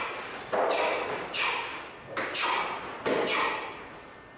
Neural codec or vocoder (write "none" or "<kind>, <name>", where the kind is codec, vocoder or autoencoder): none